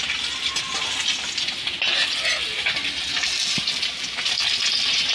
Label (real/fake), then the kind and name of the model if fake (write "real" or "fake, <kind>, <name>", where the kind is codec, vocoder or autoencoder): real